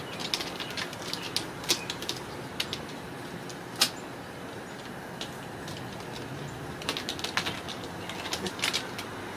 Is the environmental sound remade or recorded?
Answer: recorded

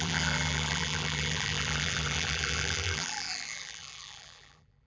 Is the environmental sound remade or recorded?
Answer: remade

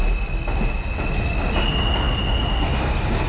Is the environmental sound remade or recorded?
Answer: recorded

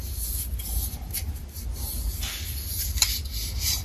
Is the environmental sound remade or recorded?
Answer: recorded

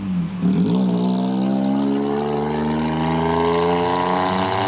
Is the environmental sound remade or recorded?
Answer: recorded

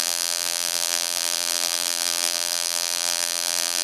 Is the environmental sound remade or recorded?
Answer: remade